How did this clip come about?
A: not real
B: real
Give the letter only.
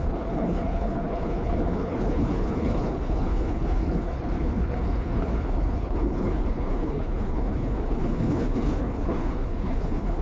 A